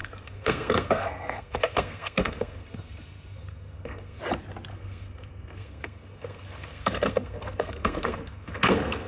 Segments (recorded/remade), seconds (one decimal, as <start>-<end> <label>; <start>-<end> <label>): 0.0-4.2 remade; 4.2-4.7 recorded; 4.7-9.1 remade